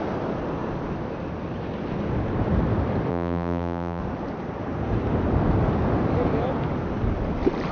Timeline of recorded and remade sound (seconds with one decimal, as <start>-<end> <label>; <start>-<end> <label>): 0.0-3.1 recorded; 3.1-4.0 remade; 4.0-7.7 recorded